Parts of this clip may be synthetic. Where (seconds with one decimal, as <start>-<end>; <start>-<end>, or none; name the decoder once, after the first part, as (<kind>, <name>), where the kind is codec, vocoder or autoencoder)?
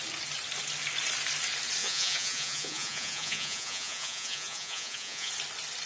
1.8-5.3 (vocoder, Vocos)